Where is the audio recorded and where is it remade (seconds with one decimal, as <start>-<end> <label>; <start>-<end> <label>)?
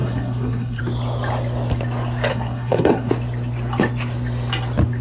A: 0.0-0.8 remade; 0.8-2.3 recorded; 2.3-3.1 remade; 3.1-5.0 recorded